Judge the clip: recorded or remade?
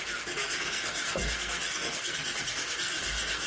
remade